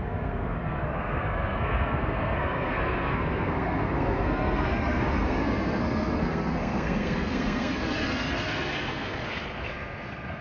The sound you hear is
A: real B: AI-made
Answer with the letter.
B